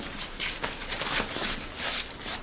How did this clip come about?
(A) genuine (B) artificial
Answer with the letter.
A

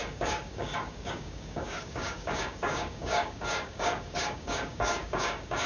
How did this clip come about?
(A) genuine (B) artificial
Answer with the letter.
B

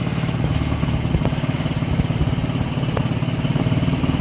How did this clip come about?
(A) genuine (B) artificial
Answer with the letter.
A